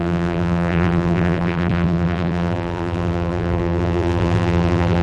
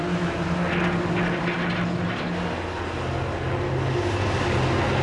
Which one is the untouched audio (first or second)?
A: second